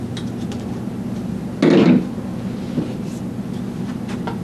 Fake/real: real